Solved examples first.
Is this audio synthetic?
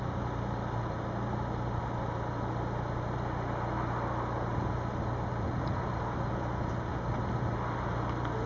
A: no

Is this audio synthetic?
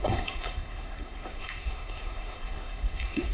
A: yes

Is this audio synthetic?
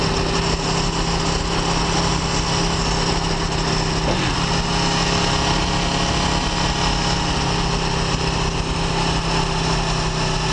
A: no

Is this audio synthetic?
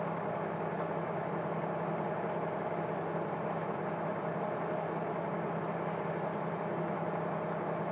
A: no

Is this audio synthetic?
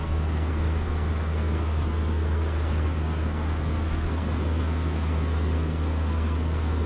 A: yes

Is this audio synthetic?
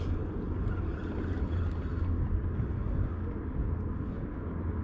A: no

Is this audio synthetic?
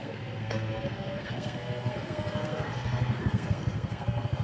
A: yes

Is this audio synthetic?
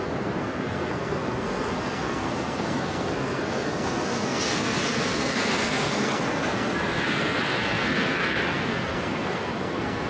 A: yes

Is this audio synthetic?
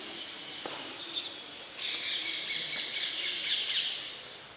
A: no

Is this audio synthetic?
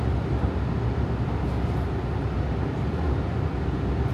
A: no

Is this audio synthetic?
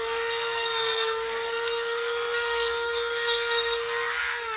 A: yes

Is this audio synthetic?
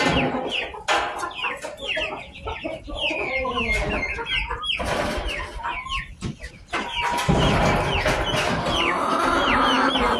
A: no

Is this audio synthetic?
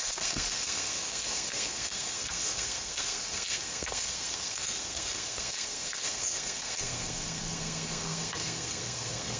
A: yes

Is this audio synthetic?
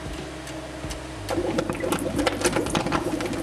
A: no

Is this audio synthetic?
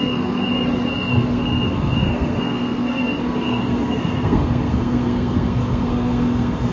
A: yes